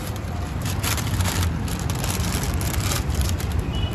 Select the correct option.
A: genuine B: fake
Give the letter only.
B